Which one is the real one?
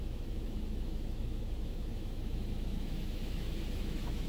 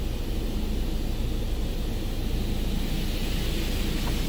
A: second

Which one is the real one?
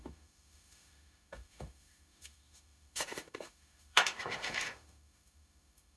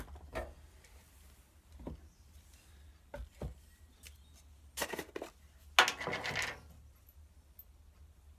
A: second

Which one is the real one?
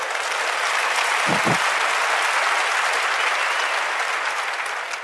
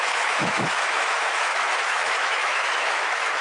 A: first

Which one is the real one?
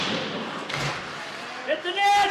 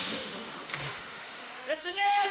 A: first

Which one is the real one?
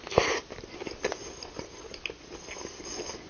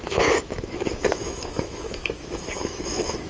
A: first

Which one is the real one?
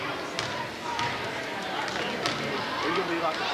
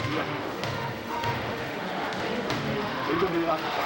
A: first